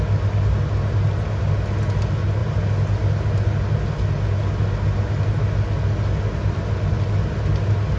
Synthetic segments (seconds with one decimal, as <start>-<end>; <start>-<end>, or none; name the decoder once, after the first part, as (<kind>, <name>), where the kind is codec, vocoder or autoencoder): none